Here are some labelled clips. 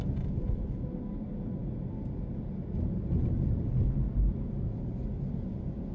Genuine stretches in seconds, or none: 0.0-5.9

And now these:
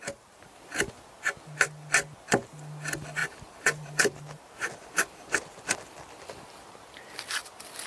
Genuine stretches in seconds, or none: 0.0-3.2; 5.6-7.9

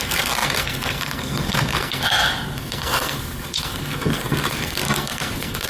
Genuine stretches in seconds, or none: none

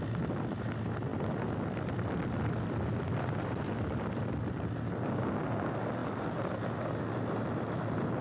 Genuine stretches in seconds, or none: 0.0-1.1; 4.1-8.2

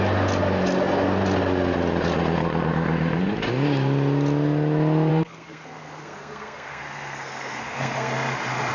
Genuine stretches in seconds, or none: 0.0-5.1; 8.1-8.7

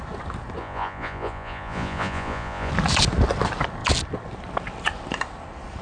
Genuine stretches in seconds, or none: 0.0-0.6; 2.7-5.8